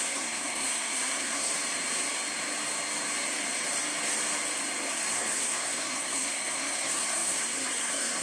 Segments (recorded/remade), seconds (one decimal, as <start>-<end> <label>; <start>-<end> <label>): 0.0-1.5 remade; 1.5-4.9 recorded; 4.9-8.2 remade